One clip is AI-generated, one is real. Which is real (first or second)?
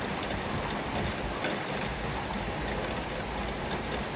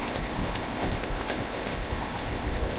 first